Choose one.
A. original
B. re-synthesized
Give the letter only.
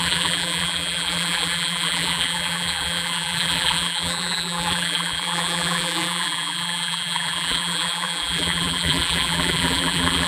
B